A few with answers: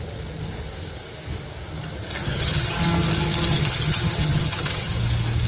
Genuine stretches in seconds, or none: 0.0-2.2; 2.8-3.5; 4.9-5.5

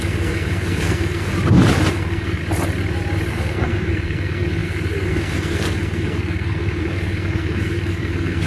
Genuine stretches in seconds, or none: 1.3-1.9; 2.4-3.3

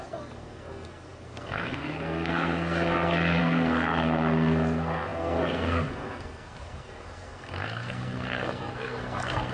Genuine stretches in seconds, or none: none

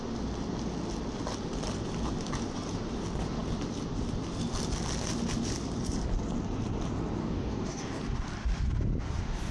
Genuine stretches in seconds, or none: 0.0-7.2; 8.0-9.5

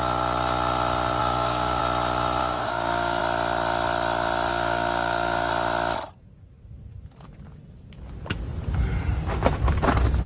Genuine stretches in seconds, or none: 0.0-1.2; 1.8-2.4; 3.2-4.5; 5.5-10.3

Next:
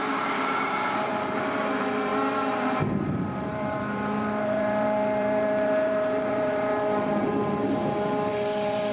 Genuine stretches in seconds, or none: 1.1-1.6

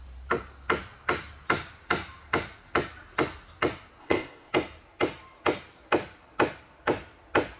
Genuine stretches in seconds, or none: 0.0-4.0; 4.5-7.6

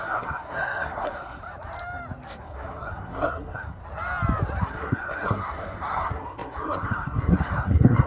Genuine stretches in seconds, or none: 1.4-2.3; 3.8-4.7